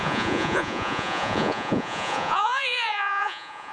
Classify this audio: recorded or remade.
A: remade